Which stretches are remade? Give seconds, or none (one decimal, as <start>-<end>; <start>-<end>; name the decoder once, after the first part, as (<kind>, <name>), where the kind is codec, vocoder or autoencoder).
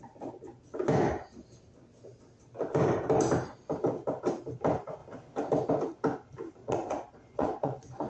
6.6-8.1 (vocoder, Vocos)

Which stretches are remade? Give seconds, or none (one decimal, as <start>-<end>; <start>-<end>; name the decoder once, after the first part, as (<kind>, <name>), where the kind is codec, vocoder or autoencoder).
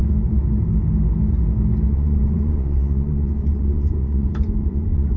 1.9-5.2 (vocoder, Vocos)